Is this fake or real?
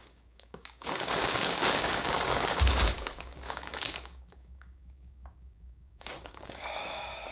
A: fake